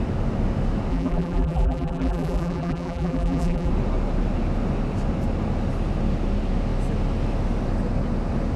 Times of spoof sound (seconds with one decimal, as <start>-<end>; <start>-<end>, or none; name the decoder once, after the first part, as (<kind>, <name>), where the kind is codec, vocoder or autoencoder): 0.9-3.7 (vocoder, BigVGAN v2)